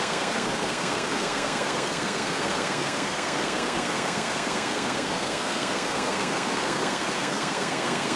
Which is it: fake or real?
fake